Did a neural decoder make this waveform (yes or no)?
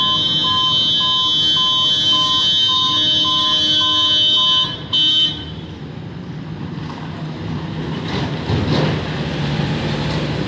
no